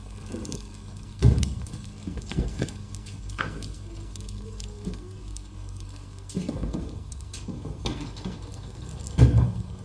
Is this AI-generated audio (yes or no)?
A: yes